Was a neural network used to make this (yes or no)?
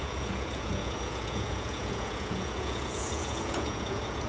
yes